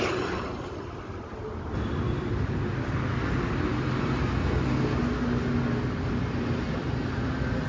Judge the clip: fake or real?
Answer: real